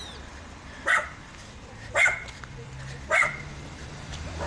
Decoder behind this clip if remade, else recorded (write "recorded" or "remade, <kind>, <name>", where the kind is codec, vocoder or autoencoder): remade, vocoder, BigVGAN v2